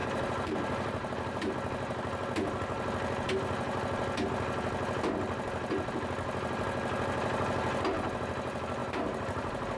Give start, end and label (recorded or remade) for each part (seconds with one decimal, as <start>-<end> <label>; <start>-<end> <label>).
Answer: 0.0-1.5 remade; 1.5-8.8 recorded; 8.8-9.8 remade